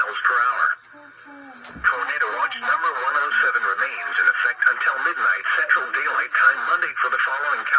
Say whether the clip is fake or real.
real